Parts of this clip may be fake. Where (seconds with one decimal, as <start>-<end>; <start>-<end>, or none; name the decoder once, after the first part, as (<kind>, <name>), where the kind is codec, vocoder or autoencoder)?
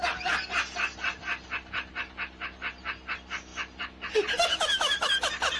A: 4.5-5.1 (autoencoder, DAC-VAE)